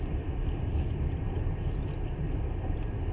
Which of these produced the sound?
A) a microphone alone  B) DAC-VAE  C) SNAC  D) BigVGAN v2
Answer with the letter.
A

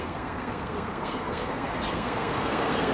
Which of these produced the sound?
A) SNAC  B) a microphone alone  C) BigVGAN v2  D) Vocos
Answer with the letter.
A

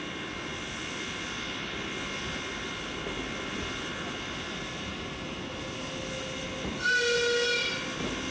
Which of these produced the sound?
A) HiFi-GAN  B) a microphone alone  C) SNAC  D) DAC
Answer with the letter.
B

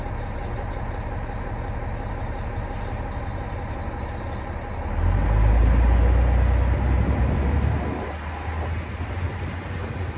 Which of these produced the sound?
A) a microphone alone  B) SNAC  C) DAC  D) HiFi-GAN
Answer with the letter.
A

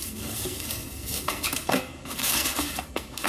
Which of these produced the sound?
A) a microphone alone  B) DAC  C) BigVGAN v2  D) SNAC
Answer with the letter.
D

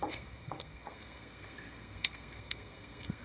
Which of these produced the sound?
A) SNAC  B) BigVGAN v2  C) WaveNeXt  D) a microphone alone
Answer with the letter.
A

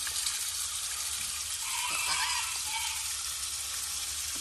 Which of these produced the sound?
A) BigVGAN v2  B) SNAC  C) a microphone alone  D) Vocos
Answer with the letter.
C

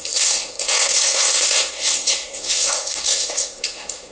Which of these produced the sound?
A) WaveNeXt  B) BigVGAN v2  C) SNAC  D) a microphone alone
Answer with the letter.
C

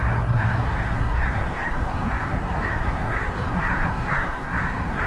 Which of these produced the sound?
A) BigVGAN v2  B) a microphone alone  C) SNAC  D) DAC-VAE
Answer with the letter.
C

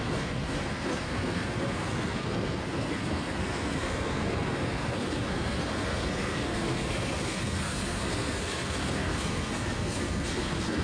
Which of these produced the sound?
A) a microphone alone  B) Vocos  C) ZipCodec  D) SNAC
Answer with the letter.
D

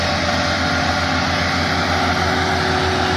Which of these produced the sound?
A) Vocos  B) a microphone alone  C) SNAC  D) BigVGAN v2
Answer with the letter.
B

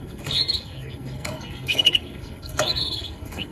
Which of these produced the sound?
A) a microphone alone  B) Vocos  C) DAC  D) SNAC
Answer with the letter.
D